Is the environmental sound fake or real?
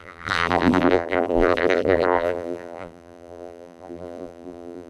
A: fake